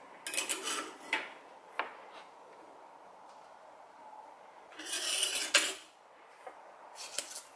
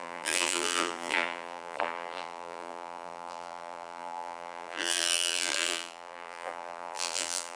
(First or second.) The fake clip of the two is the second